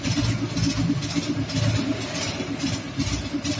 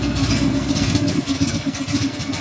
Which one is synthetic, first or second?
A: second